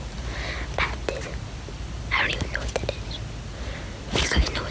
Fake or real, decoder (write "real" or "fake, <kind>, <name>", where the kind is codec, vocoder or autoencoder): real